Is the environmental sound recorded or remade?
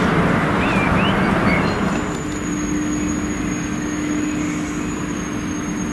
recorded